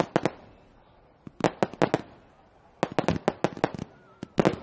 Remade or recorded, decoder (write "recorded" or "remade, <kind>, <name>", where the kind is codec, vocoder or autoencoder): recorded